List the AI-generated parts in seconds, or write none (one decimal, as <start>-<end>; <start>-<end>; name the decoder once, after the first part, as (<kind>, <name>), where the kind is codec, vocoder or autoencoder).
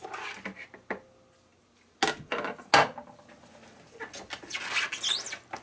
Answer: none